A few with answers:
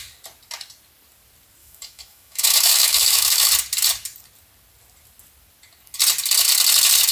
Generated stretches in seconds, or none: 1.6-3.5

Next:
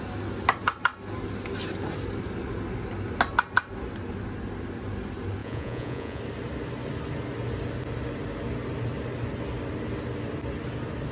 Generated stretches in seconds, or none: 5.4-6.2

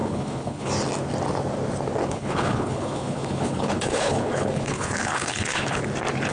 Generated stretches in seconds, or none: 0.0-0.7; 2.0-5.8

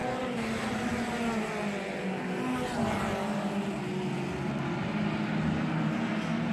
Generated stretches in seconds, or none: none

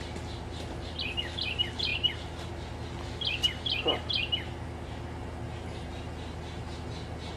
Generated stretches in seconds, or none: none

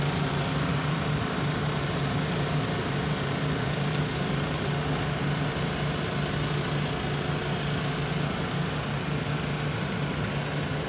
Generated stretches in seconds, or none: 0.7-4.7

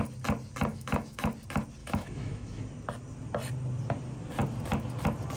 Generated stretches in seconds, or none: 0.7-1.3; 1.8-2.6

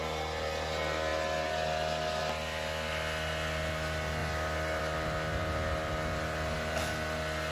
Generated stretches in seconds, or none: none